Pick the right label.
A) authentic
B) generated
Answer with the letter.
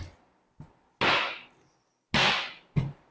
A